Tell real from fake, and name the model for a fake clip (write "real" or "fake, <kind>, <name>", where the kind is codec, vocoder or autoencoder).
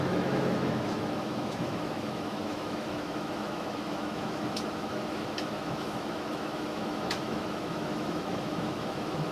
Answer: fake, autoencoder, DAC-VAE